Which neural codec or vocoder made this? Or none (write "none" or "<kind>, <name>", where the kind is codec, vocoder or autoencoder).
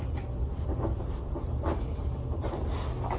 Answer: none